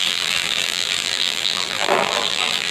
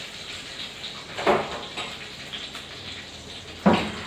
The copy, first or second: first